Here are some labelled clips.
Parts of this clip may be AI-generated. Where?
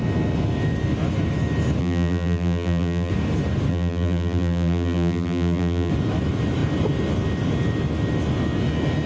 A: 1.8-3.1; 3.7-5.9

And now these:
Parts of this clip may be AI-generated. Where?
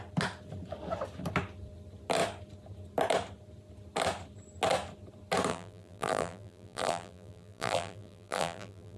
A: 5.5-9.0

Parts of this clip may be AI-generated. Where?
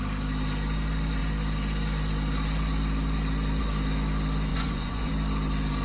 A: 4.5-5.1